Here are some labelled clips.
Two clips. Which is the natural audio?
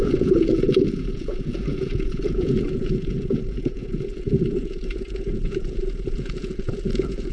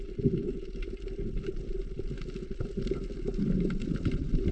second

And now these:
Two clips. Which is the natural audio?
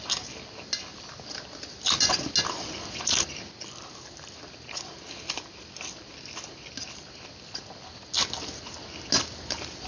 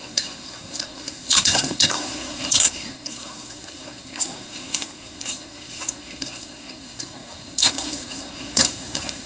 first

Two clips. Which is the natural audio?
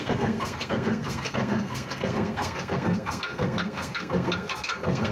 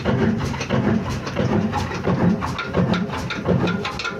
second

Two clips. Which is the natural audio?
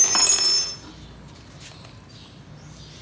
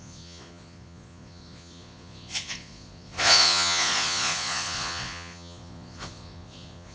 first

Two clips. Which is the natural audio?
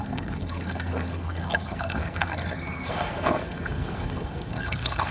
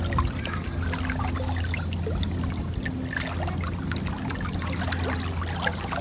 second